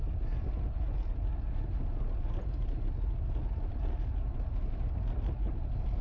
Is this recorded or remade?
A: recorded